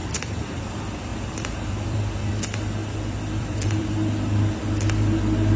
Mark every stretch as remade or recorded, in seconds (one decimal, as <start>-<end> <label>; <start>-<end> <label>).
0.0-0.7 remade; 0.7-1.1 recorded; 1.1-2.3 remade; 2.3-2.8 recorded; 2.8-3.8 remade; 3.8-5.6 recorded